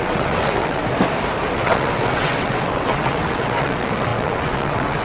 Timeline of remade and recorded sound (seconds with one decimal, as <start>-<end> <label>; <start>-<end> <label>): 0.0-0.8 remade; 0.8-1.5 recorded; 1.5-5.0 remade